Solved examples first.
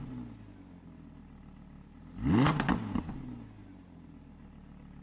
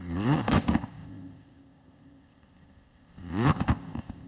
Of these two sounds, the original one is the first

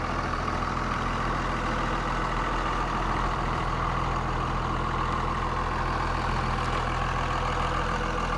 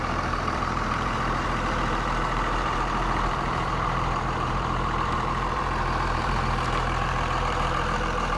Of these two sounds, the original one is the first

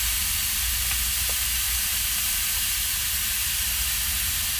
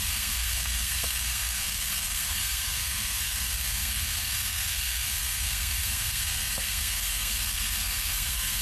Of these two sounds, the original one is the first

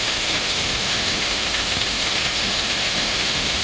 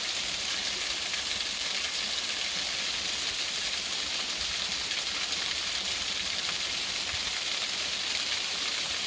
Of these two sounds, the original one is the second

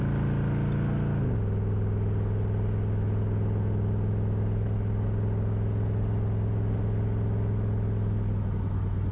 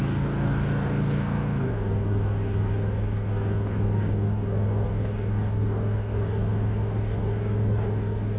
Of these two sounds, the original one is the first